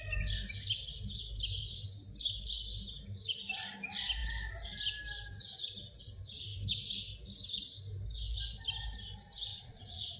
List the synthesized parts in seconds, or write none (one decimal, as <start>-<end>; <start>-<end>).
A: 9.5-10.2